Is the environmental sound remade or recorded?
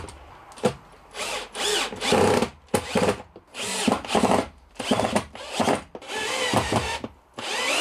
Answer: recorded